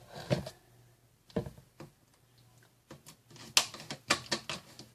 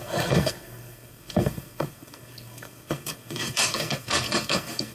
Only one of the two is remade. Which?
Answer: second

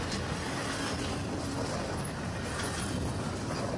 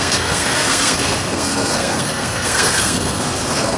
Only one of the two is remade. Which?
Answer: second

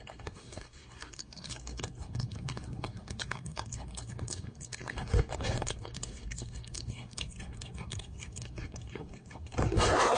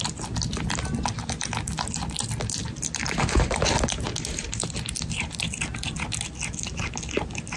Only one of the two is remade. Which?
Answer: first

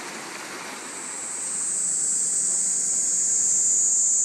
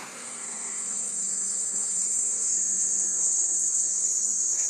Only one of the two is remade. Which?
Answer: second